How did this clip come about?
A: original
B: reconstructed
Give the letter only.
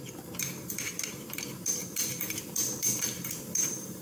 B